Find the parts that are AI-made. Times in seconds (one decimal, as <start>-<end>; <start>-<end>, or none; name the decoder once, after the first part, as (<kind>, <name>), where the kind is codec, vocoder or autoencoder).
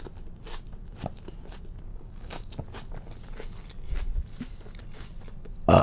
1.9-2.5 (codec, DAC)